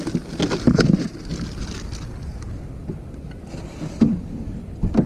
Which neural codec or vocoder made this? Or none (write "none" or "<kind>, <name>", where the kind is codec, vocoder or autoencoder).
none